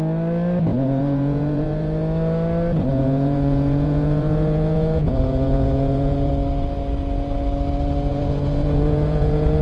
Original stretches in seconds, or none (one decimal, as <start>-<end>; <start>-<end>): 0.0-0.7; 2.0-2.9; 6.3-8.1